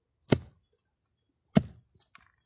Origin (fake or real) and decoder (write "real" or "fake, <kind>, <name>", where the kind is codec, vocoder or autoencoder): real